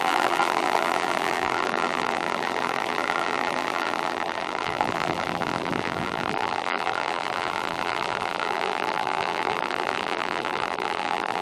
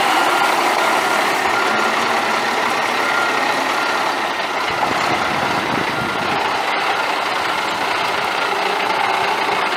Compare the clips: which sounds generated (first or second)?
first